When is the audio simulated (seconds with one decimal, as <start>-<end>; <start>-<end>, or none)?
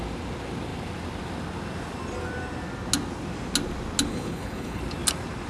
4.1-4.8